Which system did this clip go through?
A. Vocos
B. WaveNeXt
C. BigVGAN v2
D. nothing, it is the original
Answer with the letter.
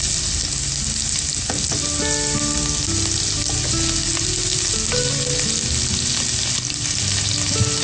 D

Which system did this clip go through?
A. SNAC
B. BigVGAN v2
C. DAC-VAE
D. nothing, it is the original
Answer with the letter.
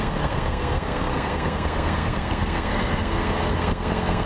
A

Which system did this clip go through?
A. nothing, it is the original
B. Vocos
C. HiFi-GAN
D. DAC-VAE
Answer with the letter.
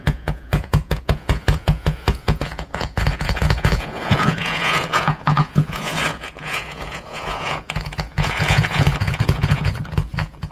B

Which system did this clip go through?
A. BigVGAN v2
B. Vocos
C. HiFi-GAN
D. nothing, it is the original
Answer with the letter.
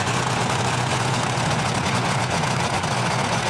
B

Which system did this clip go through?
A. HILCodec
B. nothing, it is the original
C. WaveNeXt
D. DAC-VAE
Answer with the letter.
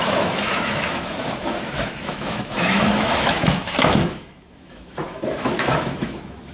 D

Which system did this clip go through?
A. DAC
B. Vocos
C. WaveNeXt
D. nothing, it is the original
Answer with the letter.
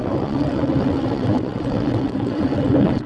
C